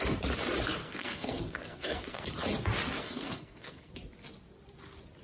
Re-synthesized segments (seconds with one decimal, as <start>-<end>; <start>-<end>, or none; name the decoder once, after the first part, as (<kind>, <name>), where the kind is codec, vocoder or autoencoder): 0.8-2.3 (codec, SNAC); 3.0-3.9